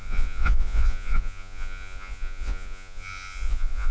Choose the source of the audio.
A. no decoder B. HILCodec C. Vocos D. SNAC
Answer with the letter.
C